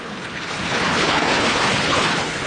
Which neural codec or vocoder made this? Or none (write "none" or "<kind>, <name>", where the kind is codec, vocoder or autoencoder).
codec, HILCodec